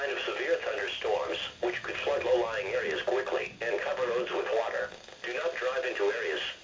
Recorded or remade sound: recorded